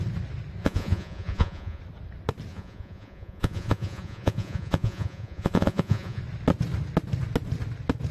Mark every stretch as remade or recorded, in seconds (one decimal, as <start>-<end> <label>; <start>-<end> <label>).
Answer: 0.0-0.6 recorded; 0.6-1.8 remade; 1.8-2.5 recorded; 2.5-6.2 remade; 6.2-8.1 recorded